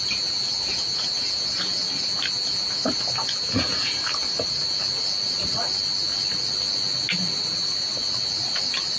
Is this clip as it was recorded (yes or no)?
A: yes